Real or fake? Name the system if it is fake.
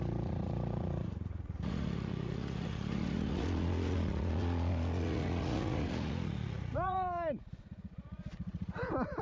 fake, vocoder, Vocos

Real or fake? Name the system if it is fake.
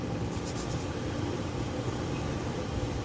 real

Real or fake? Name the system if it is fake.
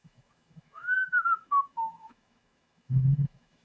fake, autoencoder, DAC-VAE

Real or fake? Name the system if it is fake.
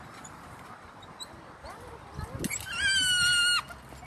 real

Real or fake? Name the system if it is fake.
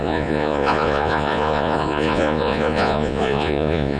fake, vocoder, Vocos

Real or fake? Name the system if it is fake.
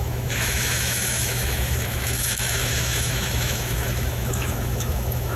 fake, autoencoder, DAC-VAE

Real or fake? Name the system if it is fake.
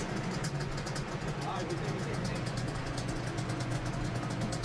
fake, vocoder, Vocos